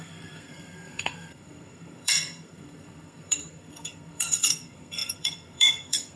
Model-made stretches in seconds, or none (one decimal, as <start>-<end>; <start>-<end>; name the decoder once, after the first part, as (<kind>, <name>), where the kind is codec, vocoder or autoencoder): 0.0-6.2 (codec, SNAC)